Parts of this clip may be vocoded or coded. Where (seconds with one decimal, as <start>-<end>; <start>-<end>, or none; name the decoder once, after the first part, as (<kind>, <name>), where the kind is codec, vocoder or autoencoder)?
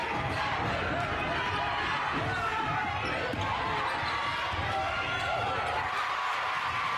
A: 0.0-1.6 (vocoder, BigVGAN v2); 2.5-7.0